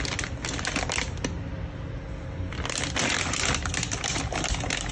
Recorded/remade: recorded